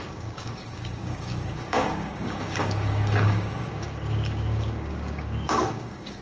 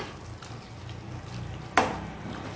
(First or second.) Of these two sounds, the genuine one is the second